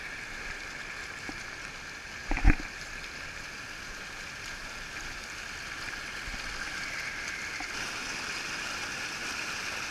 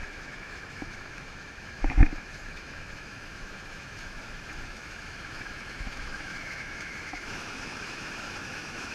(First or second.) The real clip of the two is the first